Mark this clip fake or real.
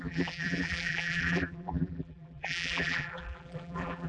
fake